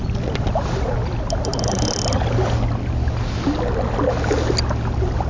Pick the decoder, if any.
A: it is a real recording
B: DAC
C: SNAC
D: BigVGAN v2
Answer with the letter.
A